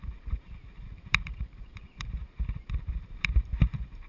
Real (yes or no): no